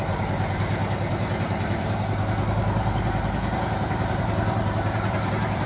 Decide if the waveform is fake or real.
fake